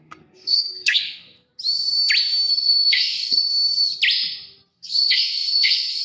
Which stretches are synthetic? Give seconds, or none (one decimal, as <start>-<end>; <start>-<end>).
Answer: 0.0-1.5; 2.5-3.5; 4.7-6.0